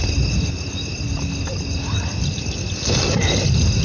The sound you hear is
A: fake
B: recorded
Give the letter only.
B